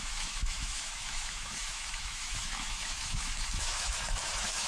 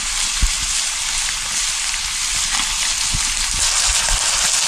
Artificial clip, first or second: first